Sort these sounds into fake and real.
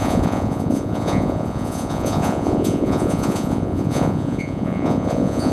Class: fake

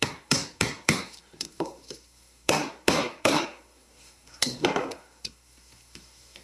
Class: fake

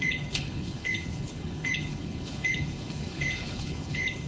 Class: fake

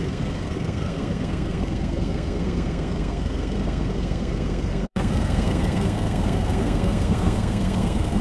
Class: fake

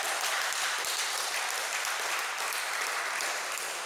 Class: real